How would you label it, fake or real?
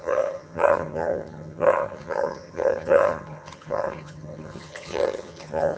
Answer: fake